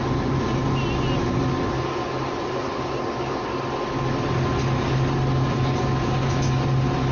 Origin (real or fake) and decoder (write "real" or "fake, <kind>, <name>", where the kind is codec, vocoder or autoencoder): real